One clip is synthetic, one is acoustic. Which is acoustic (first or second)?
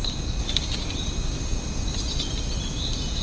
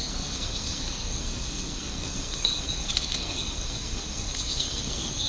first